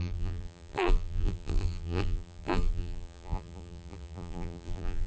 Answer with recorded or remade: remade